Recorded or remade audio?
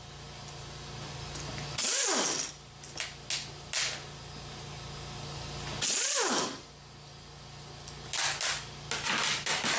recorded